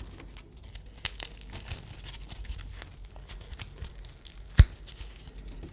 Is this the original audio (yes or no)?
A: yes